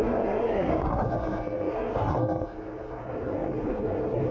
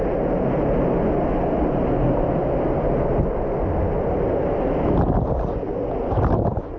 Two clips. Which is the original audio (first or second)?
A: second